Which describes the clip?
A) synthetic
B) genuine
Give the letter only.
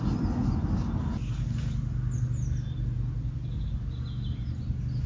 B